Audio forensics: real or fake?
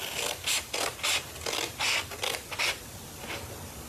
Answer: real